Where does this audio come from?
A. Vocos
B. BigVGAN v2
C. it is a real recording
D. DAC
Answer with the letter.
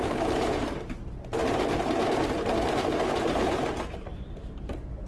B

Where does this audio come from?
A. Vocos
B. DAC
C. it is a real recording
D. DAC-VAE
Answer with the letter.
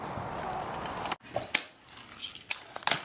C